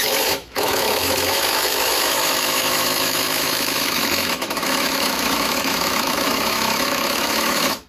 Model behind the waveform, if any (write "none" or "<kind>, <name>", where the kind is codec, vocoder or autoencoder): autoencoder, DAC-VAE